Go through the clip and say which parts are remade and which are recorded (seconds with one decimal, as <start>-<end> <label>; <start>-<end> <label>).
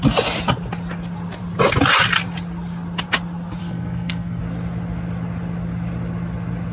0.0-3.6 recorded; 3.6-4.4 remade; 4.4-6.7 recorded